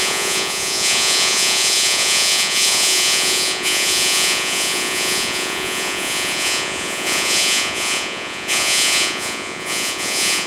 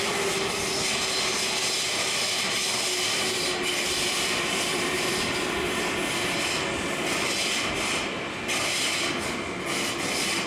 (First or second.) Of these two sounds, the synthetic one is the first